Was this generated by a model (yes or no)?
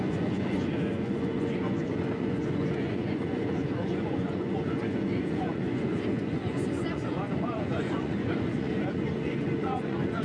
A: yes